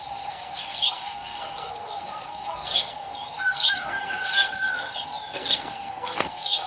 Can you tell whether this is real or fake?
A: fake